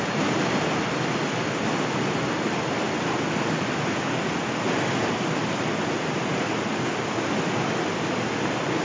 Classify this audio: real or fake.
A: real